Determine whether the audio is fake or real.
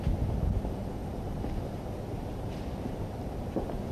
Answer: real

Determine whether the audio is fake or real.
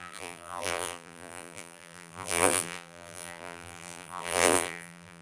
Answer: fake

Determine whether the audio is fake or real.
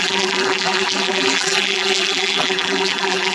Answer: fake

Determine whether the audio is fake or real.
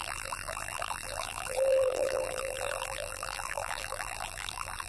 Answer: fake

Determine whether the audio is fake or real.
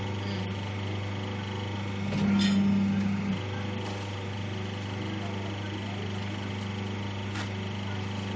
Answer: real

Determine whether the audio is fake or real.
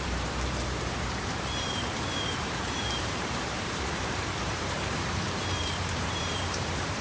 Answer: fake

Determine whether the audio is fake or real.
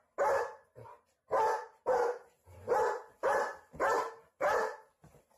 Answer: real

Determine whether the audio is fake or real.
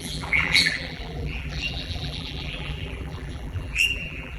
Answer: fake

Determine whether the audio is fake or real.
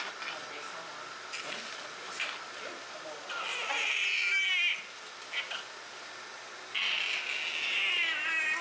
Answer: real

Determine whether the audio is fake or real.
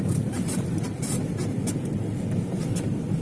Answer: real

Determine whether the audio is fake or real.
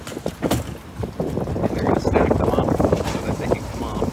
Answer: fake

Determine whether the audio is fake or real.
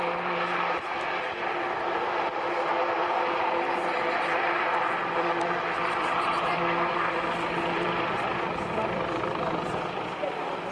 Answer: fake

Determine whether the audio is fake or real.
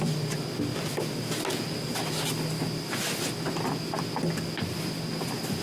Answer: real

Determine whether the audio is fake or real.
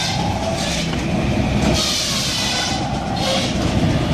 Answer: real